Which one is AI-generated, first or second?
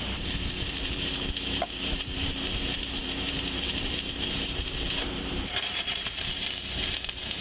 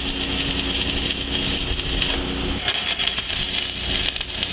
first